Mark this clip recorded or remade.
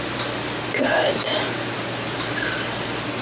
recorded